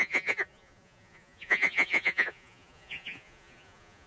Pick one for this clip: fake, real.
fake